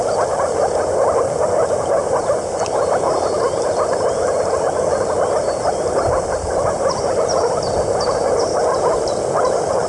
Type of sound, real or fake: real